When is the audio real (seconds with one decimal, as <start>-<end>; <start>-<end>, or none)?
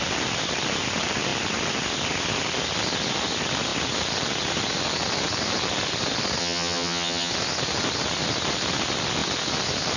0.0-6.4; 7.3-10.0